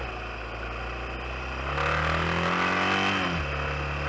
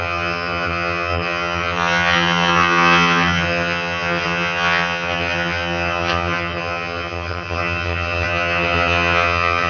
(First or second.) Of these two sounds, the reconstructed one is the second